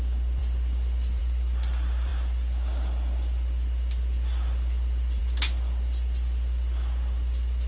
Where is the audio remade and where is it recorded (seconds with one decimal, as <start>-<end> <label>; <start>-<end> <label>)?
0.0-7.7 recorded